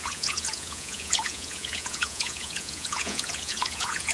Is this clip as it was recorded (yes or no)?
no